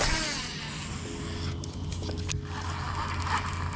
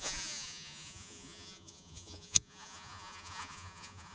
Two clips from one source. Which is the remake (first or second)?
second